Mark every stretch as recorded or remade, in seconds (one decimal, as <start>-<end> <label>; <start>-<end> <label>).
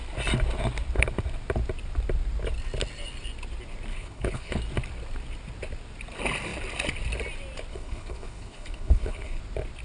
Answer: 0.0-3.9 recorded; 3.9-4.6 remade; 4.6-7.7 recorded; 7.7-9.4 remade; 9.4-9.8 recorded